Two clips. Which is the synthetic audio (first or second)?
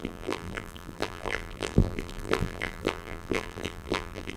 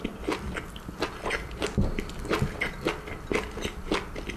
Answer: first